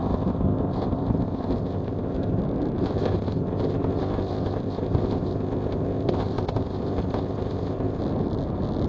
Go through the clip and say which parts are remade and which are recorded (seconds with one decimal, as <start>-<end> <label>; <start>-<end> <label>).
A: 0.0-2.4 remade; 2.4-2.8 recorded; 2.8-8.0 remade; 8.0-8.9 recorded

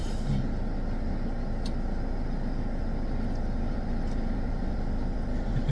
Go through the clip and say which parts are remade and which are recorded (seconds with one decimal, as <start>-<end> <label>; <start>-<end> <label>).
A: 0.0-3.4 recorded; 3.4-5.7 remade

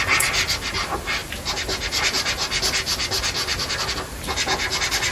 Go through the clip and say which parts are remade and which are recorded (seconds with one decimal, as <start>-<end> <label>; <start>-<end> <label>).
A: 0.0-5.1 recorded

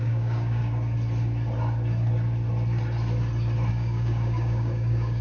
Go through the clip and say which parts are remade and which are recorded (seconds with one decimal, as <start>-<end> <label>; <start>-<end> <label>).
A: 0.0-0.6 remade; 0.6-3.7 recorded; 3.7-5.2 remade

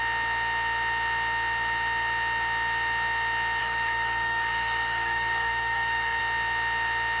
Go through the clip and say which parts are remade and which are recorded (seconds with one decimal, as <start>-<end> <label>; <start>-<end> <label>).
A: 0.0-3.6 recorded; 3.6-6.2 remade; 6.2-7.2 recorded